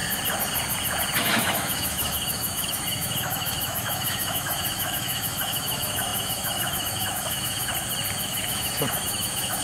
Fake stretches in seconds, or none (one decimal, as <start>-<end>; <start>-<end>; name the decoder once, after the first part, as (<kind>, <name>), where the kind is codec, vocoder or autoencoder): 1.2-7.7 (autoencoder, DAC-VAE); 8.2-9.6